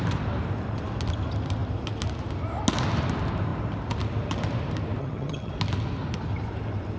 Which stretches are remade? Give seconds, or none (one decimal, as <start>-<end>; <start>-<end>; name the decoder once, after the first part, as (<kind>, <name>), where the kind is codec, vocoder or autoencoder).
5.0-5.5 (vocoder, HiFi-GAN)